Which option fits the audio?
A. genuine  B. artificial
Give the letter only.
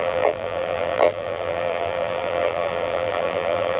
B